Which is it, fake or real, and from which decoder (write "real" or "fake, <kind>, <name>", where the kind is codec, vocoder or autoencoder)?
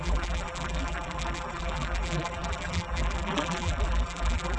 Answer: fake, vocoder, BigVGAN v2